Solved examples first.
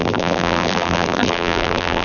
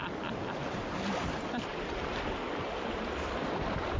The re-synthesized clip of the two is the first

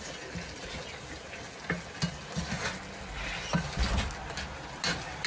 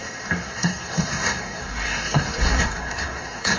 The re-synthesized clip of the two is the second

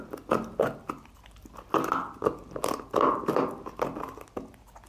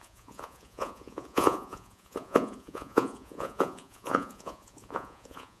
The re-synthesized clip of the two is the second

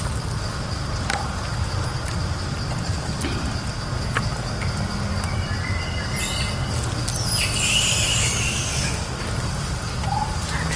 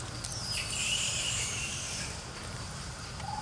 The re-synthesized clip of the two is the second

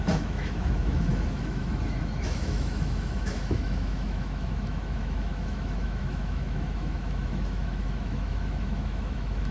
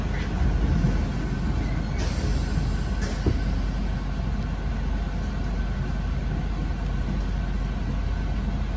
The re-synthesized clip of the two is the first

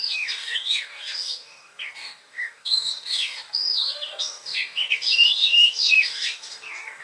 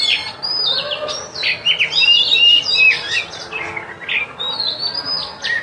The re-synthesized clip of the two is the first